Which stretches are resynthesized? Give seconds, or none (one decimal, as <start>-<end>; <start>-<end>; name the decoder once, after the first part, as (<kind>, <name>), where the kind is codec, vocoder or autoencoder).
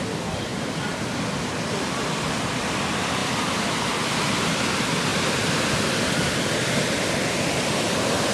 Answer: 3.2-3.8 (vocoder, BigVGAN v2); 5.1-5.8